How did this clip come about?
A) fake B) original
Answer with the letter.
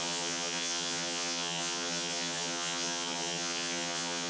A